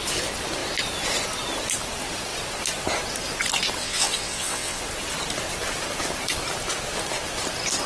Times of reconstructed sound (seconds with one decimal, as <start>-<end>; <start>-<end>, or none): 3.8-4.8